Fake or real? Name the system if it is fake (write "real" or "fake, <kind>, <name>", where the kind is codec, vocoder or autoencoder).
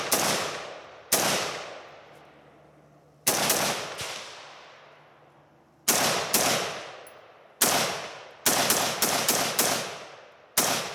real